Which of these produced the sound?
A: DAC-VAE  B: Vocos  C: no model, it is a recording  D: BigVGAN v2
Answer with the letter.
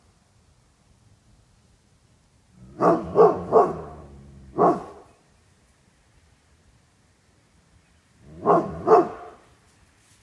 C